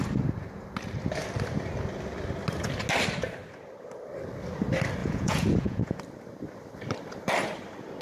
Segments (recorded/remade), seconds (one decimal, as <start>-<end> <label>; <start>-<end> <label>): 0.0-5.0 recorded; 5.0-6.0 remade; 6.0-8.0 recorded